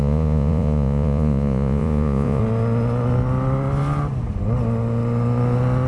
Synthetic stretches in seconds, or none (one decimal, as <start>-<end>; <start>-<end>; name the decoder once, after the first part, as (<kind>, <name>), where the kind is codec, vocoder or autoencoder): 0.0-2.4 (vocoder, Vocos)